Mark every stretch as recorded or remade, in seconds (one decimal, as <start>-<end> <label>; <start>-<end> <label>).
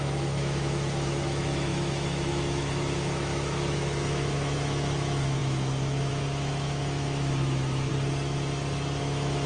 0.0-7.9 remade; 7.9-9.0 recorded; 9.0-9.5 remade